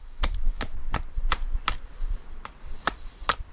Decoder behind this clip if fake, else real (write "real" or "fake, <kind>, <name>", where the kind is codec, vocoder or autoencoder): fake, vocoder, BigVGAN v2